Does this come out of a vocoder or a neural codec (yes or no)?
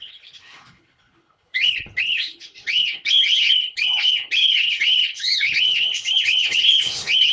yes